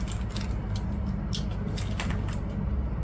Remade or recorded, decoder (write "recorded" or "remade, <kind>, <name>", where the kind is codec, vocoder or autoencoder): recorded